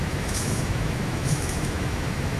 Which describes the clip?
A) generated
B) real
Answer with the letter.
A